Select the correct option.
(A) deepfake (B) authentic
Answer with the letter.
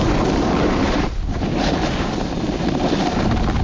B